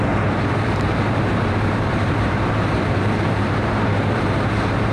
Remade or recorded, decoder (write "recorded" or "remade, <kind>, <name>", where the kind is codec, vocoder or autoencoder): remade, vocoder, BigVGAN v2